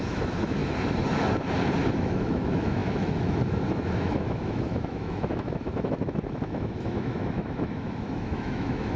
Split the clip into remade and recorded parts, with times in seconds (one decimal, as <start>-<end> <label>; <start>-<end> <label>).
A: 0.0-0.6 remade; 0.6-1.9 recorded; 1.9-9.0 remade